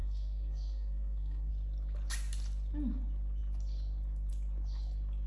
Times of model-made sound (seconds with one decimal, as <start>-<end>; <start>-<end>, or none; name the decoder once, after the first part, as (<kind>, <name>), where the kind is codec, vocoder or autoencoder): 0.0-1.5 (codec, SNAC)